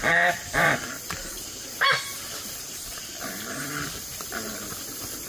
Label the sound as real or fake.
fake